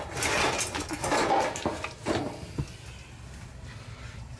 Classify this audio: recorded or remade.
recorded